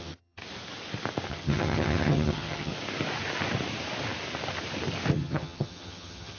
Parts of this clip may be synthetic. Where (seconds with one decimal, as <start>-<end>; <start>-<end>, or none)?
0.0-0.4; 1.3-2.7; 5.1-6.4